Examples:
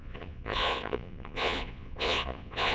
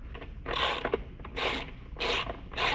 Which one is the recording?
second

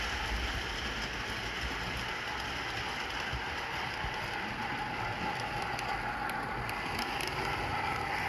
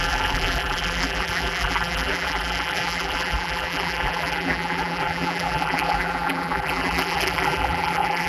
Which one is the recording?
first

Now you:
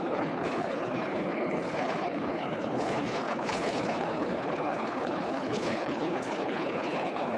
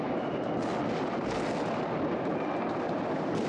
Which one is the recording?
second